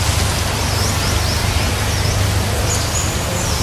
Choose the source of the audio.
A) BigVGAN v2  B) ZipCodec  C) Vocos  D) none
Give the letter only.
D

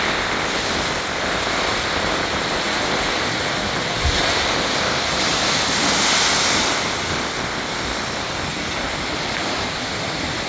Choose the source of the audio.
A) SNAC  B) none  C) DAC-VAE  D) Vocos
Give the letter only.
B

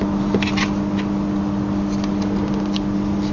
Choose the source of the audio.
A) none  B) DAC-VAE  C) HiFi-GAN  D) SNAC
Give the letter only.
A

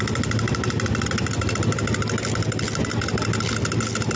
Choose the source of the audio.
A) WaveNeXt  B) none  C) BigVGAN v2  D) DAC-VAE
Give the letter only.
B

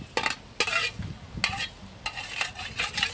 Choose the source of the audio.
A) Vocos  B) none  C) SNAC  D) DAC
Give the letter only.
B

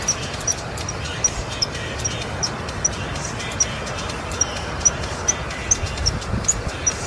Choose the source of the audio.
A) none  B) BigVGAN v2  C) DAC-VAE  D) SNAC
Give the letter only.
A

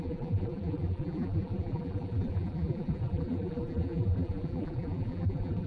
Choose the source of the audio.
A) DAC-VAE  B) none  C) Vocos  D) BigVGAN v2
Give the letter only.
D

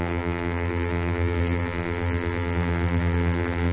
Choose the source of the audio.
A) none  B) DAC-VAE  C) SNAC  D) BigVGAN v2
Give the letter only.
D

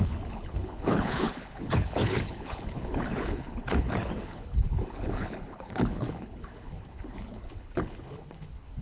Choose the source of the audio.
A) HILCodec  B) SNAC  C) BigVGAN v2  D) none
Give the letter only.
A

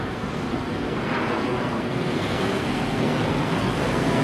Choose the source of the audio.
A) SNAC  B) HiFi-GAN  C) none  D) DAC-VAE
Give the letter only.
A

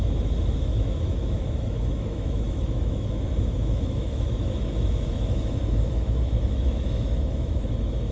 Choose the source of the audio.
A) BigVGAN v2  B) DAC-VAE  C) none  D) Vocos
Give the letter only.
B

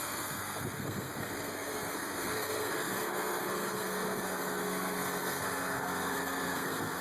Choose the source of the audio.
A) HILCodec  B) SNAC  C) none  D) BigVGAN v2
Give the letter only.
B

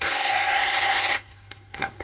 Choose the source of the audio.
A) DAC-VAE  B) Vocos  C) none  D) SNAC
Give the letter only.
D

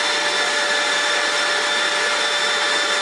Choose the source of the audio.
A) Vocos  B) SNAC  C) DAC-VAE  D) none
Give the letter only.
D